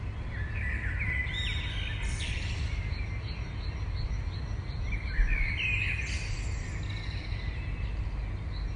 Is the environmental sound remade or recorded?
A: recorded